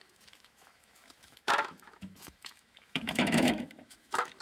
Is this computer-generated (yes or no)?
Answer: yes